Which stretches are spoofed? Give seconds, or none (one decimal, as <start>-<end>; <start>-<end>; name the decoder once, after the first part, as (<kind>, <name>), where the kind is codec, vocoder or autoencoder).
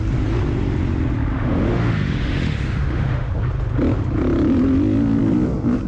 1.3-3.3 (autoencoder, DAC-VAE)